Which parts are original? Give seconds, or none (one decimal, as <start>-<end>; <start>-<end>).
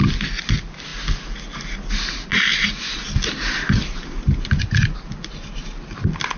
0.0-6.4